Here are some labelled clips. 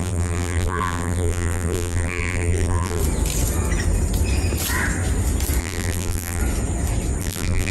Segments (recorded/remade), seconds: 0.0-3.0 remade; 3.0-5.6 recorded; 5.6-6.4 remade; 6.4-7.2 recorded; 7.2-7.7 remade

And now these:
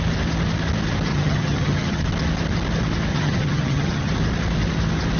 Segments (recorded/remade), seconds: 0.0-1.1 recorded; 1.1-2.0 remade; 2.0-3.1 recorded; 3.1-4.1 remade; 4.1-5.2 recorded

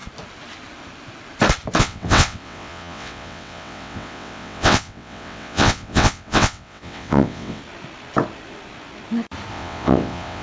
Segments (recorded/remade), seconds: 0.0-1.8 recorded; 1.8-7.6 remade; 7.6-9.5 recorded; 9.5-10.4 remade

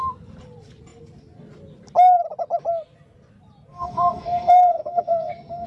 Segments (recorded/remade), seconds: 0.0-3.7 recorded; 3.7-5.3 remade; 5.3-5.7 recorded

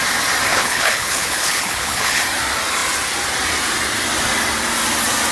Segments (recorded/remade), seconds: 0.0-0.5 recorded; 0.5-2.2 remade; 2.2-5.3 recorded

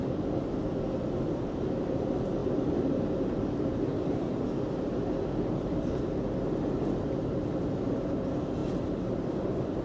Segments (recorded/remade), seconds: 0.0-9.8 recorded